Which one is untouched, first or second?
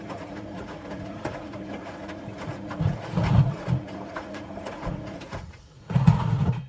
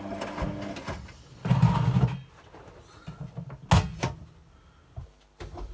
second